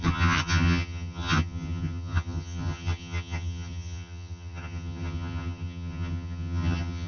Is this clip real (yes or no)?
no